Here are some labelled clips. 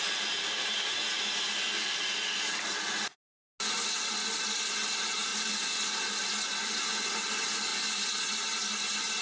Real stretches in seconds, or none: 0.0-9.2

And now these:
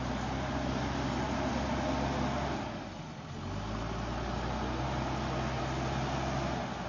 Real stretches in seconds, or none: 0.0-6.9

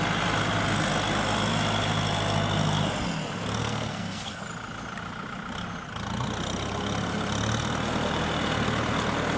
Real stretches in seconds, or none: 0.0-3.6; 4.4-9.4

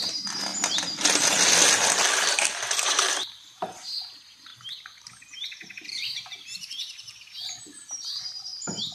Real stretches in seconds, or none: 0.5-2.3

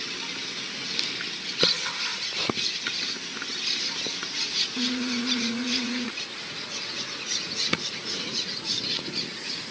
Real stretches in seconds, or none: 0.0-2.1; 2.8-4.2; 8.7-9.7

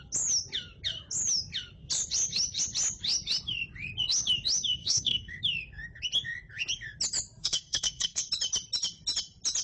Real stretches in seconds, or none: 0.0-4.8; 5.4-7.4; 8.2-9.6

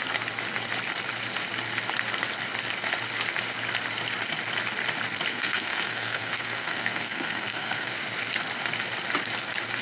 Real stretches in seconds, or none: 0.0-5.3; 7.9-9.8